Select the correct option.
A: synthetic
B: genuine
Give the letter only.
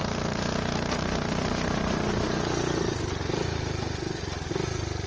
B